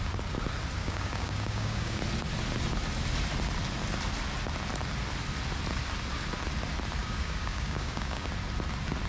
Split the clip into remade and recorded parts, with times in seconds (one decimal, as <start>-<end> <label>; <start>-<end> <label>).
0.0-0.8 recorded; 0.8-2.0 remade; 2.0-7.0 recorded; 7.0-8.3 remade; 8.3-9.1 recorded